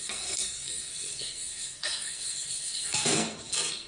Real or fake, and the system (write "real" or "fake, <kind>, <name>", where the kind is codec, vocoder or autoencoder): fake, codec, SNAC